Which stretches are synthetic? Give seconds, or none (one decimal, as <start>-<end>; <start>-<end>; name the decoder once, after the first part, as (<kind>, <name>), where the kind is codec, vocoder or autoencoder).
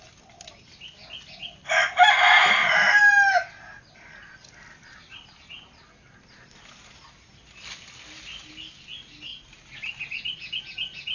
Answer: none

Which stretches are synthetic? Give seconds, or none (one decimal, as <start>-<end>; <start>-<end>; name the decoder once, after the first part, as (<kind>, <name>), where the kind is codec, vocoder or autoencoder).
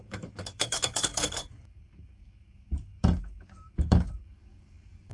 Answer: 0.0-5.1 (codec, DAC)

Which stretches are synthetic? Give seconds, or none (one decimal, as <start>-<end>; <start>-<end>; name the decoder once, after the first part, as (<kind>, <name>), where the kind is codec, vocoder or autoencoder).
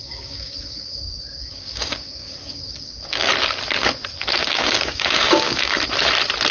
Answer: 0.0-3.3 (codec, DAC); 4.4-5.8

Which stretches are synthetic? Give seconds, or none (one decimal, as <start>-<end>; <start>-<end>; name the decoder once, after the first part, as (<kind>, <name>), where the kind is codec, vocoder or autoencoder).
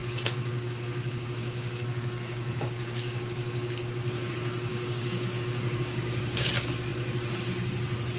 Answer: 0.0-4.3 (codec, DAC); 4.7-6.5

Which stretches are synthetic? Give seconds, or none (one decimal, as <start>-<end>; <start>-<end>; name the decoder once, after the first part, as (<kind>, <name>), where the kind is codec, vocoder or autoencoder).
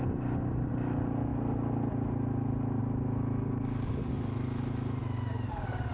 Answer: 3.4-4.1 (codec, DAC)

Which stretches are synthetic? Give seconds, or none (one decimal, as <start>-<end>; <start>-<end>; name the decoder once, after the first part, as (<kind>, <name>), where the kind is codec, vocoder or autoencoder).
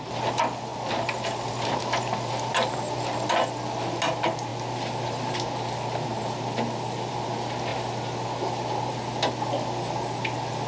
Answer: none